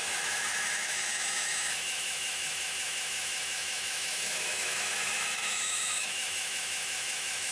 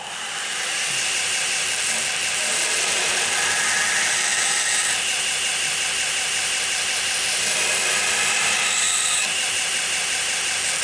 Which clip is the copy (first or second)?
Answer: first